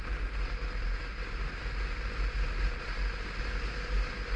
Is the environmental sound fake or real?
real